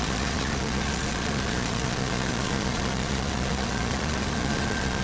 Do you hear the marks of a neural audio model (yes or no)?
yes